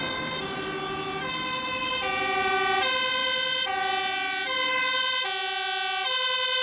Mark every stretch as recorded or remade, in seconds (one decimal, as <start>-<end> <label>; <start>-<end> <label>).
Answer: 0.0-6.6 recorded